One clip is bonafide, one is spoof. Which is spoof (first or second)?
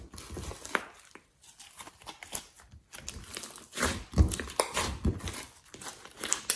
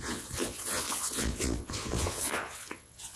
second